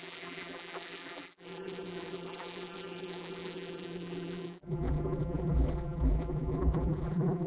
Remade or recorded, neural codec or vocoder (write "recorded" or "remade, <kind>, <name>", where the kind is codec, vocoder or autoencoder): remade, vocoder, BigVGAN v2